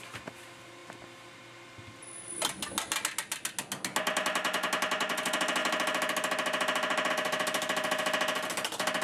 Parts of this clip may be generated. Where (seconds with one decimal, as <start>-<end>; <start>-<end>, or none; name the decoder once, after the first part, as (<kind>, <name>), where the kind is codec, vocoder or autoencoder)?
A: none